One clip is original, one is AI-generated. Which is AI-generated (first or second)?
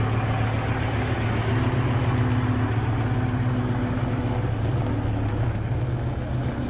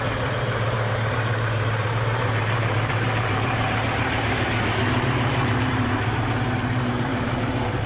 second